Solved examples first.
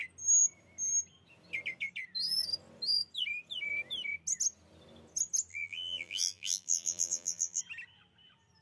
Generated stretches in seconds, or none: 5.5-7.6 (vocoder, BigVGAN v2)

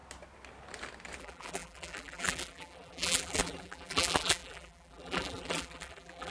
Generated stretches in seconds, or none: 1.2-6.3 (vocoder, BigVGAN v2)

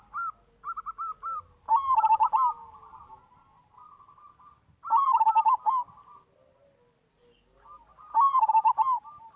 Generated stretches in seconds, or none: none

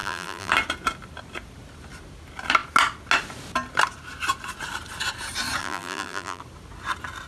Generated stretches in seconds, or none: 0.0-0.5 (vocoder, BigVGAN v2); 5.6-6.4

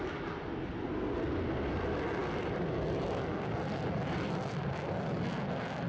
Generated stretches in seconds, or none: 2.2-4.9 (vocoder, BigVGAN v2)